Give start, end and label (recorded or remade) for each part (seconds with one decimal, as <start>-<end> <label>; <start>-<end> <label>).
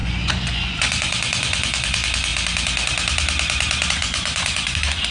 0.0-2.3 remade; 2.3-3.9 recorded; 3.9-5.1 remade